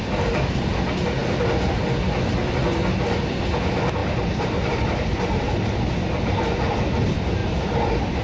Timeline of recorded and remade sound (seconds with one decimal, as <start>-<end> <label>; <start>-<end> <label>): 0.0-4.0 recorded; 4.0-5.8 remade; 5.8-7.4 recorded; 7.4-8.2 remade